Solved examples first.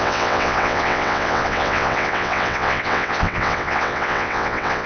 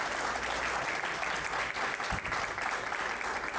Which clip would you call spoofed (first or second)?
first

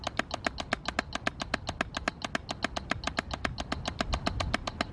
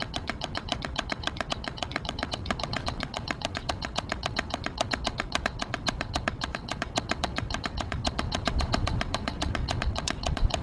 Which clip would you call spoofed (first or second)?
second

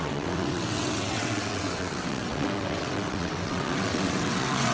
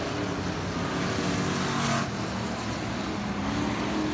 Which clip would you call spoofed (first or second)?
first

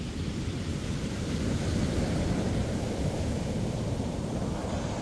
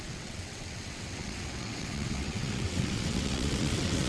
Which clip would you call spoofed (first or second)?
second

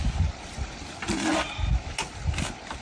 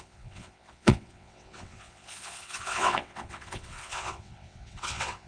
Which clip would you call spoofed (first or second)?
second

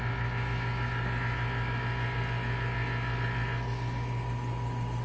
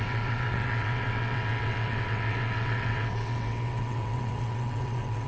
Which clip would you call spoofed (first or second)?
second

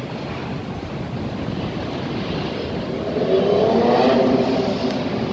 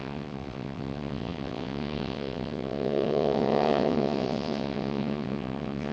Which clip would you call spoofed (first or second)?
second